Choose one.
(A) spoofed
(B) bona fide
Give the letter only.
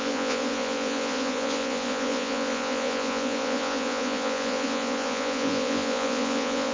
A